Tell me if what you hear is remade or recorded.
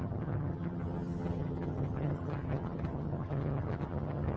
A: remade